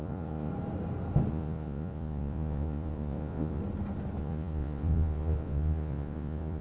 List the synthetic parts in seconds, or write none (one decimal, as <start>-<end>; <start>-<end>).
0.0-0.5; 1.3-3.6; 4.2-6.6